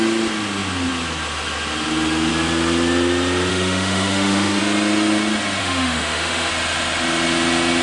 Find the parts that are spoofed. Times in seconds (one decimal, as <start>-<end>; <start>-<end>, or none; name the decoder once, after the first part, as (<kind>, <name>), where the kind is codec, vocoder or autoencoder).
3.5-4.6 (autoencoder, DAC-VAE); 5.6-6.5